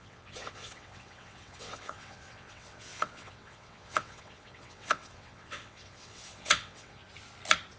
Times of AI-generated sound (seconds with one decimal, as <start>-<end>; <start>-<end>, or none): 0.0-7.0